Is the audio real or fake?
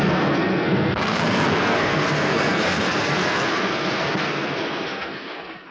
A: fake